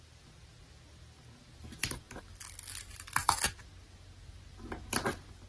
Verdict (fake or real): real